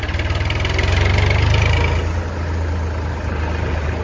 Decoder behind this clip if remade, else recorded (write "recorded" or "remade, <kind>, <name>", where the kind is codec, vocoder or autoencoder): recorded